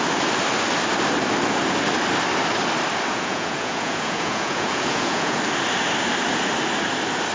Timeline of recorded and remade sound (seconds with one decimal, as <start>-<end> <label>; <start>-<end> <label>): 0.0-3.1 recorded; 3.1-5.4 remade; 5.4-7.3 recorded